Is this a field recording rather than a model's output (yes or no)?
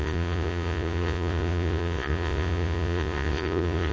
no